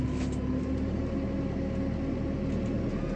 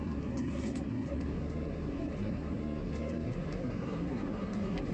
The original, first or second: first